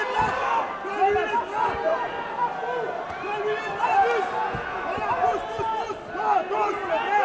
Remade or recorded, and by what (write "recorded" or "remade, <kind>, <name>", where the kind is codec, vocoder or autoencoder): recorded